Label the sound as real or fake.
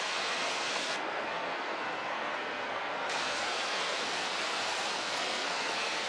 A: fake